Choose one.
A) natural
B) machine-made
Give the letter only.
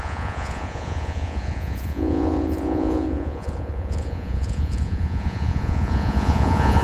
B